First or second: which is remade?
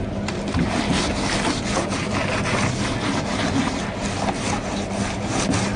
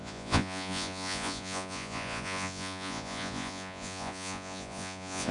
second